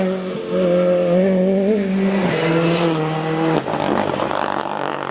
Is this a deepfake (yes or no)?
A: no